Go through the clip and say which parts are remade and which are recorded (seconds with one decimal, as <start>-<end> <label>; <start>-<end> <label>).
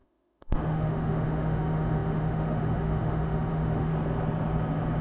0.0-3.9 remade; 3.9-5.0 recorded